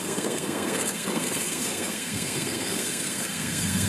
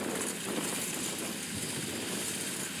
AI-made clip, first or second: first